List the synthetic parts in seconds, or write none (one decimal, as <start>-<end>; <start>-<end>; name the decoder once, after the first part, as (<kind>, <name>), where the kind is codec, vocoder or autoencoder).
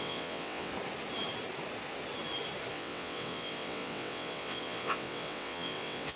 0.0-0.7 (vocoder, WaveNeXt); 2.7-6.2